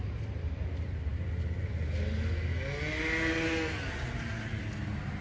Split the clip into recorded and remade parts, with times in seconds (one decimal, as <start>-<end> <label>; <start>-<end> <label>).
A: 0.0-5.2 recorded